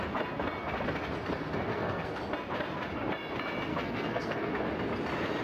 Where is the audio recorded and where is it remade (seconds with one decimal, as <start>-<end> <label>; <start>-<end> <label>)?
0.0-1.7 recorded; 1.7-2.2 remade; 2.2-3.7 recorded; 3.7-4.5 remade; 4.5-5.4 recorded